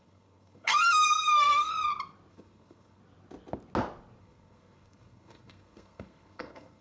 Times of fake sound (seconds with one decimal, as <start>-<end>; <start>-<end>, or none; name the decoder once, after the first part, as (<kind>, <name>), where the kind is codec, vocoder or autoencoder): 0.0-1.7 (codec, SNAC); 2.3-3.0; 4.2-6.8